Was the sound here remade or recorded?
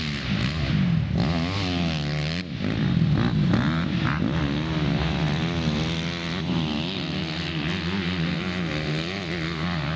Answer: recorded